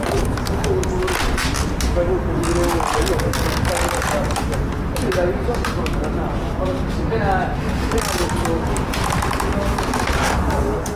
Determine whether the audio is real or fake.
real